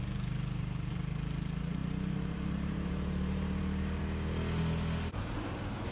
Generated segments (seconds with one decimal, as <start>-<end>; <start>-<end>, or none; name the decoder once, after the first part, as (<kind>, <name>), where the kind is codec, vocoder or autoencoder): 1.8-4.0 (vocoder, BigVGAN v2)